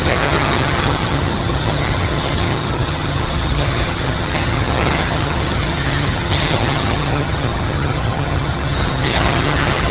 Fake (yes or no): yes